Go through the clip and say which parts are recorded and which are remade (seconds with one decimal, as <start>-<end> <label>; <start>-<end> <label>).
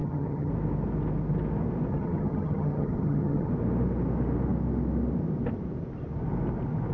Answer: 0.0-0.5 remade; 0.5-1.9 recorded; 1.9-3.5 remade; 3.5-6.9 recorded